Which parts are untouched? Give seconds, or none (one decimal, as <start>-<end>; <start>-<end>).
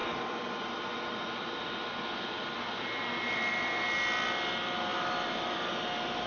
3.8-4.9; 5.7-6.3